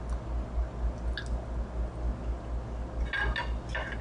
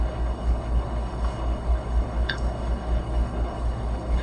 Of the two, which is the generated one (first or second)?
second